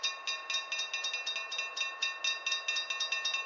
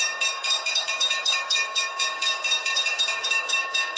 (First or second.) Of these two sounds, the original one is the first